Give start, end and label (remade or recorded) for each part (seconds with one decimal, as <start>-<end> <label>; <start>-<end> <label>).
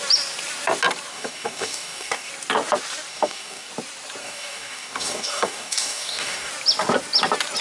0.0-1.1 recorded; 1.1-2.3 remade; 2.3-3.1 recorded; 3.1-3.7 remade; 3.7-4.2 recorded; 4.2-6.5 remade; 6.5-7.6 recorded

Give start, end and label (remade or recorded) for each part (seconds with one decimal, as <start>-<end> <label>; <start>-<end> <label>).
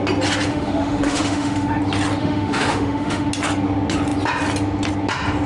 0.0-0.5 recorded; 0.5-1.8 remade; 1.8-2.2 recorded; 2.2-3.3 remade; 3.3-5.5 recorded